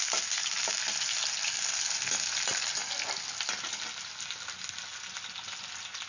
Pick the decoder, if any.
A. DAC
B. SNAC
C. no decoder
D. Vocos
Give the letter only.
C